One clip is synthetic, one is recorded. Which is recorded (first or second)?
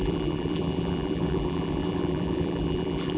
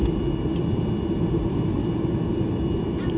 second